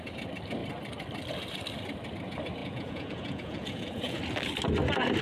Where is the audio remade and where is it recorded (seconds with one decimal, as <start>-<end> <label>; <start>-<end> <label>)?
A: 0.0-2.6 recorded; 2.6-4.2 remade; 4.2-5.2 recorded